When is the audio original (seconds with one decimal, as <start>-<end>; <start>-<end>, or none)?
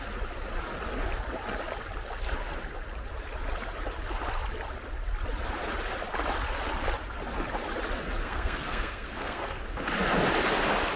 0.0-8.2; 9.6-11.0